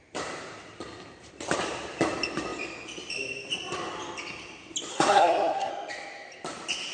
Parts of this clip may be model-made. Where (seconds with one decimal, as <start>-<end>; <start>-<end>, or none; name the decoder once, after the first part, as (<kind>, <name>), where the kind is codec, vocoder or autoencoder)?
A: 4.9-5.7 (codec, SNAC)